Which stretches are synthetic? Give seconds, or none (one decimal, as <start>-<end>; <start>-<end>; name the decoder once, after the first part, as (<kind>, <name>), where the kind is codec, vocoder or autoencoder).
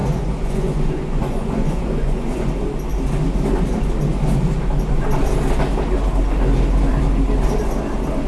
0.0-2.5 (vocoder, Vocos)